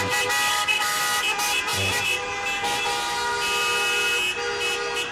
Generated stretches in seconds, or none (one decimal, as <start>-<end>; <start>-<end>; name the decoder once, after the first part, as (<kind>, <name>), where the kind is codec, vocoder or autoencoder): 0.5-1.0 (codec, SNAC)